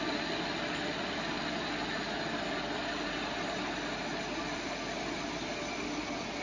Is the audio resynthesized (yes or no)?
no